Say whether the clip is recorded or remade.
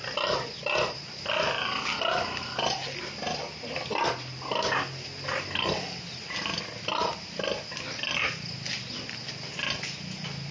recorded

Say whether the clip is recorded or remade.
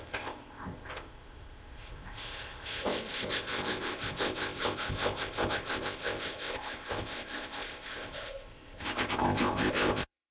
remade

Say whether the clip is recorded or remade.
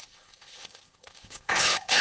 remade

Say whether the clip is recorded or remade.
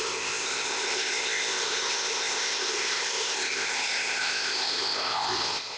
remade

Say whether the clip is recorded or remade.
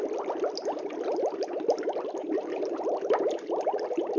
recorded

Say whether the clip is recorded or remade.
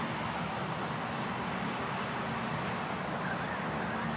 recorded